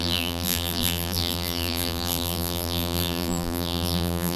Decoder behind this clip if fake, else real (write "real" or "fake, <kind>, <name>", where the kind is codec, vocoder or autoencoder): fake, vocoder, BigVGAN v2